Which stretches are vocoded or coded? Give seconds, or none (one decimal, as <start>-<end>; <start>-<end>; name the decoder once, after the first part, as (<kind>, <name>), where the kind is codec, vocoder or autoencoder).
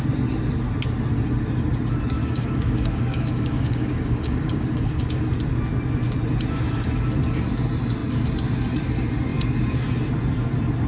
2.2-5.3 (codec, DAC)